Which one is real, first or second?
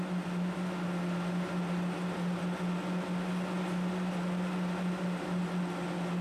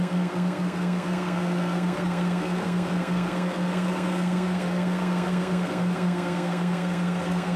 first